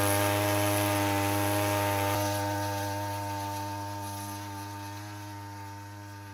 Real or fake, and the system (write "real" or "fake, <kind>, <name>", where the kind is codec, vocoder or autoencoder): real